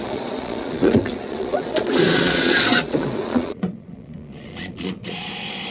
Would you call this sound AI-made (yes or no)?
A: yes